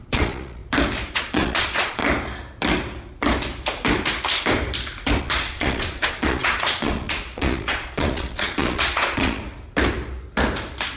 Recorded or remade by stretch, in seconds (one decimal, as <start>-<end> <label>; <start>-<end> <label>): 0.0-0.6 remade; 0.6-1.1 recorded; 1.1-2.0 remade; 2.0-5.2 recorded; 5.2-9.4 remade; 9.4-11.0 recorded